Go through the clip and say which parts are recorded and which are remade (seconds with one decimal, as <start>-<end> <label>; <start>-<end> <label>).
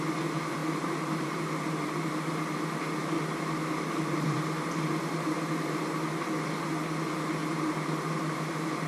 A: 0.0-0.6 recorded; 0.6-2.1 remade; 2.1-4.1 recorded; 4.1-5.9 remade; 5.9-7.4 recorded; 7.4-8.9 remade